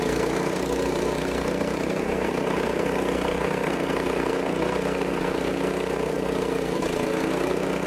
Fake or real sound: fake